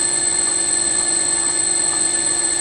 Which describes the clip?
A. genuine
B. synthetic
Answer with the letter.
B